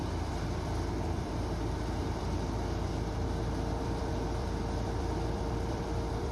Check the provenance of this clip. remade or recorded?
remade